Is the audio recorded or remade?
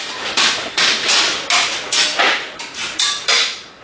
recorded